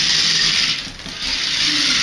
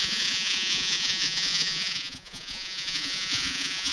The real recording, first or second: first